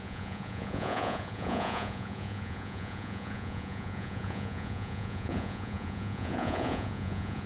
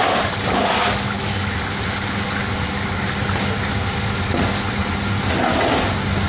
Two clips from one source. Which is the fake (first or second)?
first